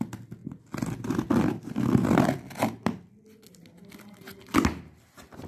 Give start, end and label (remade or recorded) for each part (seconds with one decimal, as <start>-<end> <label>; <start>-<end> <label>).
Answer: 0.0-5.5 recorded